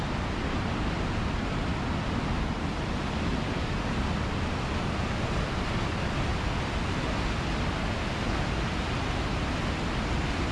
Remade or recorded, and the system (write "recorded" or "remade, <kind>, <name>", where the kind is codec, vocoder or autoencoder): recorded